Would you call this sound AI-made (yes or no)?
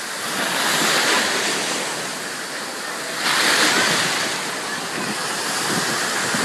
no